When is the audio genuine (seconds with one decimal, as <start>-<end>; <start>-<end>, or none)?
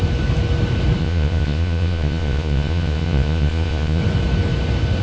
0.0-1.0; 4.0-5.0